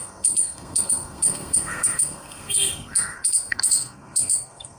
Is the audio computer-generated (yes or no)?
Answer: yes